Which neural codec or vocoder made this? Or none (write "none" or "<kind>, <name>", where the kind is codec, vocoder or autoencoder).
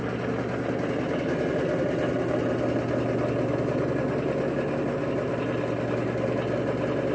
none